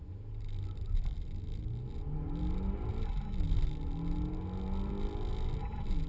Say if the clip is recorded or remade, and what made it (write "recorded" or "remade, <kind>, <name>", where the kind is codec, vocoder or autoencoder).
recorded